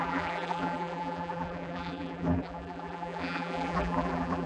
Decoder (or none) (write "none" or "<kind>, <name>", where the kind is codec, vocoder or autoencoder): vocoder, BigVGAN v2